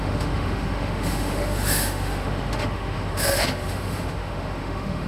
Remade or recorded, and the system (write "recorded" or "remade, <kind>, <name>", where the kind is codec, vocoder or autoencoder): remade, autoencoder, DAC-VAE